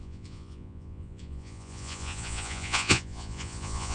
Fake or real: fake